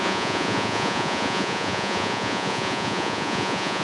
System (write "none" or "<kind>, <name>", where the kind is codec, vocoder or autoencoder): vocoder, Vocos